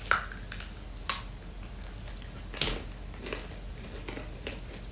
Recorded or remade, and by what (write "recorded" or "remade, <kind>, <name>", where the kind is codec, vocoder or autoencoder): recorded